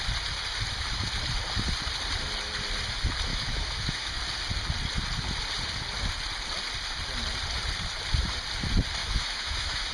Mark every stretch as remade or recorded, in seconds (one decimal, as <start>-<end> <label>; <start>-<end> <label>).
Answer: 0.0-3.3 recorded; 3.3-4.2 remade; 4.2-9.0 recorded; 9.0-9.9 remade